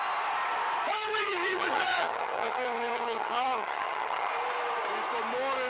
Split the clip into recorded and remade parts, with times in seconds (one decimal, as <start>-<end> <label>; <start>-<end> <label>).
0.0-0.9 recorded; 0.9-4.3 remade; 4.3-5.7 recorded